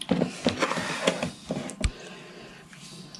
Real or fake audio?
real